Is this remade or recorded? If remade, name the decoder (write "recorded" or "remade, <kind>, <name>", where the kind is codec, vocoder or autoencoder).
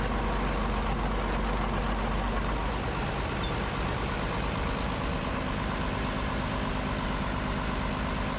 recorded